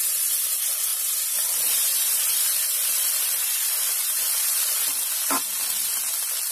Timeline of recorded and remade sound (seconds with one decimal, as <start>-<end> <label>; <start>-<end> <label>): 0.0-0.9 recorded; 0.9-4.8 remade; 4.8-6.5 recorded

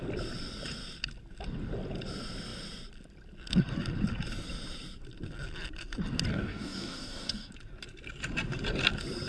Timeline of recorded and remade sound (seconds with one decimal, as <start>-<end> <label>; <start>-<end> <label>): 0.0-6.3 recorded; 6.3-7.5 remade; 7.5-9.3 recorded

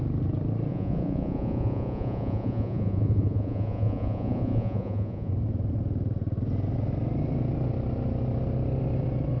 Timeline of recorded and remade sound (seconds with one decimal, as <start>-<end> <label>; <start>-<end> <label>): 0.0-0.7 recorded; 0.7-5.3 remade; 5.3-9.4 recorded